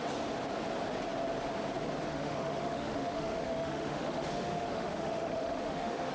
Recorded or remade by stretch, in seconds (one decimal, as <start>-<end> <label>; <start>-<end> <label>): 0.0-2.1 recorded; 2.1-6.1 remade